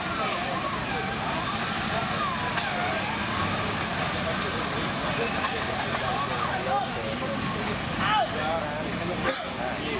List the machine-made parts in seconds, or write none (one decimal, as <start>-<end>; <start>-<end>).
none